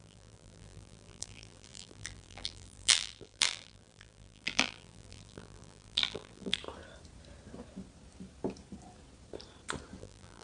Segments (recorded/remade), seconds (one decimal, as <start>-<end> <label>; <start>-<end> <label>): 0.0-6.6 remade; 6.6-10.0 recorded; 10.0-10.4 remade